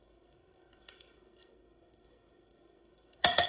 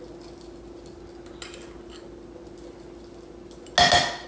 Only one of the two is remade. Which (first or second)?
first